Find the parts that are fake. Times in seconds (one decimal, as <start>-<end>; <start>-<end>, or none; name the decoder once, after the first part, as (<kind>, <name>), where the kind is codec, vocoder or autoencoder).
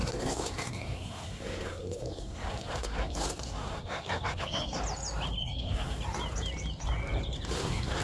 0.0-4.8 (codec, SNAC); 5.4-6.0; 7.5-8.0